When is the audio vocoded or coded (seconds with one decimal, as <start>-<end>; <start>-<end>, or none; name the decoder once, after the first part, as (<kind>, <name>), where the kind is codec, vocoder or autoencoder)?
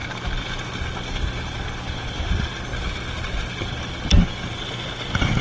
2.2-2.7 (vocoder, BigVGAN v2); 4.4-5.4